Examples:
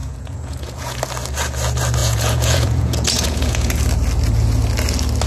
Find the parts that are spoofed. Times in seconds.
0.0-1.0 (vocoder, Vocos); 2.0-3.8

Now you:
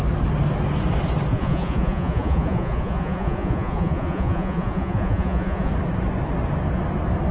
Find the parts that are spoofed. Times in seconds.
1.3-5.7 (vocoder, Vocos)